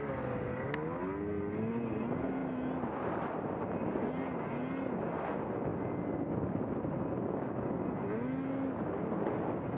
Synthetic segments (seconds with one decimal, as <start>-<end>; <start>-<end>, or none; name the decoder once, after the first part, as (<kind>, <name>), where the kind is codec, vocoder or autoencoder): none